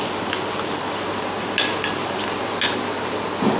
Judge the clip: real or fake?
real